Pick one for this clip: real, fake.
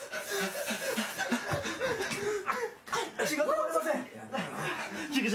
real